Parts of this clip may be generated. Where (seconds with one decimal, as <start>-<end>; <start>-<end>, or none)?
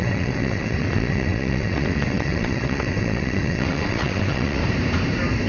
0.0-4.6